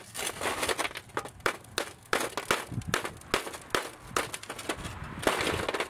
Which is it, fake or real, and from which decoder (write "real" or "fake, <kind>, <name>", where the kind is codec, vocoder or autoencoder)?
real